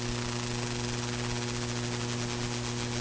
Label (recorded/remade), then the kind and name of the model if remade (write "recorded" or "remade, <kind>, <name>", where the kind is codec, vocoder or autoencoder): recorded